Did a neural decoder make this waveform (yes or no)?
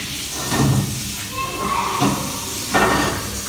no